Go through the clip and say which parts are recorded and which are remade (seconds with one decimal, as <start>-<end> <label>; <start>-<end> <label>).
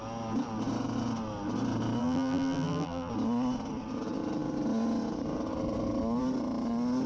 0.0-2.0 recorded; 2.0-3.1 remade; 3.1-7.1 recorded